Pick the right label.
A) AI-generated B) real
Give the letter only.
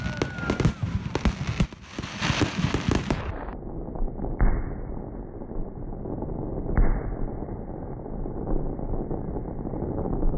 B